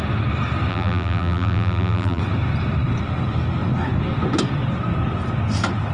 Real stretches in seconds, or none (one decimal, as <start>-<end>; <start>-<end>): 0.0-0.7; 2.2-5.9